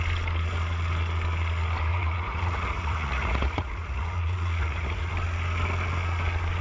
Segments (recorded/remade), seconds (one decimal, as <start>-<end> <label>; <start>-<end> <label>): 0.0-1.9 recorded; 1.9-5.1 remade; 5.1-6.6 recorded